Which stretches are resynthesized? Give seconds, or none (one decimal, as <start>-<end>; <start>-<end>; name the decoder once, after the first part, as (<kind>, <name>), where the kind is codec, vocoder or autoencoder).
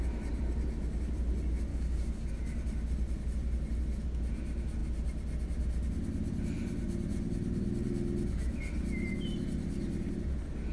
1.7-2.3 (codec, DAC)